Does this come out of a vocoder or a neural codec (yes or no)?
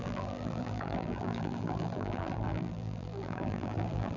yes